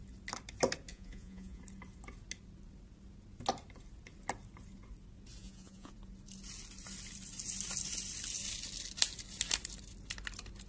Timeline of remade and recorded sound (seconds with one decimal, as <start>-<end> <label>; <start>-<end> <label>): 0.0-0.9 recorded; 0.9-1.6 remade; 1.6-5.4 recorded; 5.4-5.9 remade; 5.9-10.7 recorded